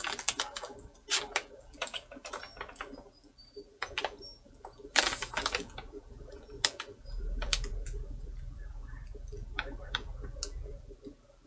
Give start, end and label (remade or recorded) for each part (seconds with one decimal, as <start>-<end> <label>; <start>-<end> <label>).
0.0-11.5 remade